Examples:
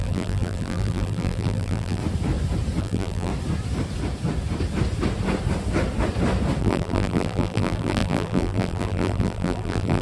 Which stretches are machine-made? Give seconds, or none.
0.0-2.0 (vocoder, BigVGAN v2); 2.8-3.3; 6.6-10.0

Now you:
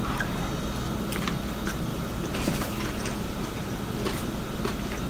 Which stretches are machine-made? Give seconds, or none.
1.9-5.1 (vocoder, BigVGAN v2)

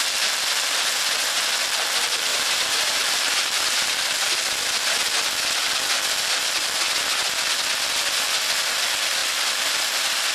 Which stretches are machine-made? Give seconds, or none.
2.3-3.9 (vocoder, BigVGAN v2)

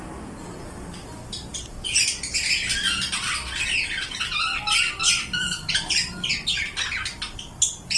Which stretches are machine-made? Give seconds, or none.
1.5-2.4 (vocoder, BigVGAN v2)

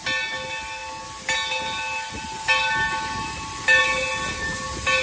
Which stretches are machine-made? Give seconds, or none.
none